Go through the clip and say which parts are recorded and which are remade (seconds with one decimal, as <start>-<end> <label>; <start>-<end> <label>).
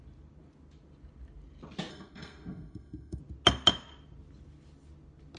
0.0-1.9 recorded; 1.9-3.2 remade; 3.2-5.4 recorded